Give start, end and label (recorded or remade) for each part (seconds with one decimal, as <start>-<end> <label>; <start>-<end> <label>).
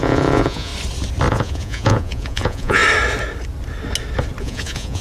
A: 0.0-0.7 remade; 0.7-1.3 recorded; 1.3-2.8 remade; 2.8-4.4 recorded; 4.4-5.0 remade